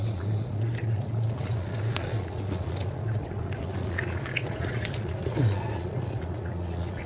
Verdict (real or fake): fake